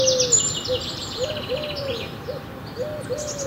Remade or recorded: recorded